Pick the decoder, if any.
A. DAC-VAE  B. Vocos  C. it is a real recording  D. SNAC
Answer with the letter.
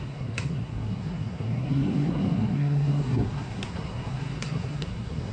D